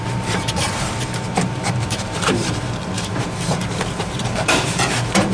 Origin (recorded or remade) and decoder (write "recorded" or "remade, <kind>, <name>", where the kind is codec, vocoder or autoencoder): remade, vocoder, BigVGAN v2